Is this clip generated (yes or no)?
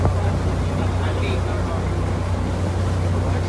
no